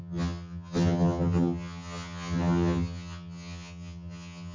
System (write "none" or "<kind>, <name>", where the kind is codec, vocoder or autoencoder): vocoder, HiFi-GAN